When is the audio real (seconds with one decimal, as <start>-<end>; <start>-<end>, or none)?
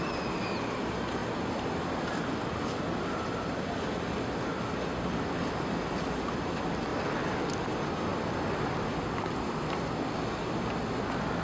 0.0-8.1; 10.3-11.4